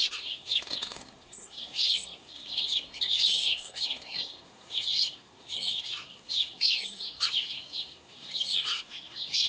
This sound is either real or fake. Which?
fake